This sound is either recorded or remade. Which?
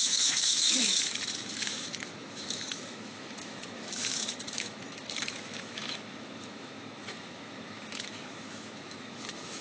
remade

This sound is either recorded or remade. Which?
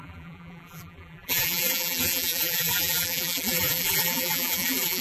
remade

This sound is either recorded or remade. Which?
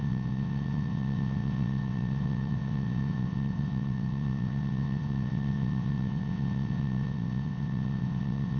remade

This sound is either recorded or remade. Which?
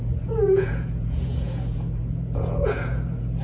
remade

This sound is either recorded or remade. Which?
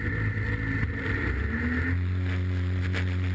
recorded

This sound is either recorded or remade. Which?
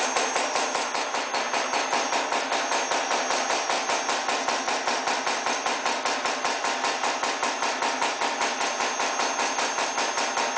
recorded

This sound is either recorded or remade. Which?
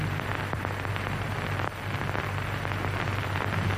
remade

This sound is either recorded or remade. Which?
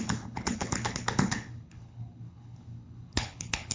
remade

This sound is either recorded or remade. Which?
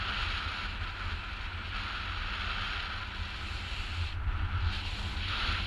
recorded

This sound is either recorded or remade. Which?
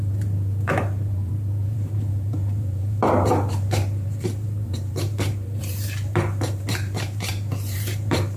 remade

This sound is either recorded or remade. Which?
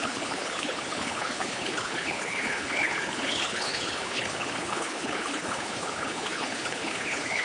remade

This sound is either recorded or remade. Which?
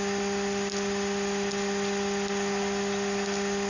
recorded